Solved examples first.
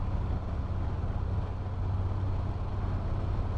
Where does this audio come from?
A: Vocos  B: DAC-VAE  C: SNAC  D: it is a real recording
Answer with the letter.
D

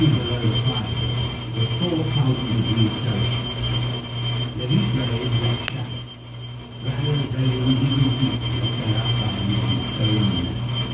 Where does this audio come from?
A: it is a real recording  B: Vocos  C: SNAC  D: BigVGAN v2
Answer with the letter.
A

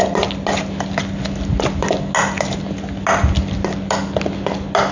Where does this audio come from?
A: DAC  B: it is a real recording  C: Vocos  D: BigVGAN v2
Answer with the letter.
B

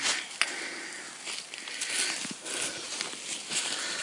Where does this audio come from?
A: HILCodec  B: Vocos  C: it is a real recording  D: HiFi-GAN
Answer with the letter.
C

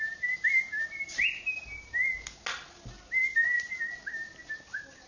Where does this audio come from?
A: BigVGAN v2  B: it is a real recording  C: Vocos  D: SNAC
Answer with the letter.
B